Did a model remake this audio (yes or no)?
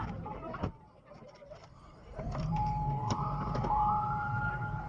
yes